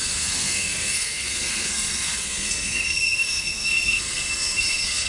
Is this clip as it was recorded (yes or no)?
no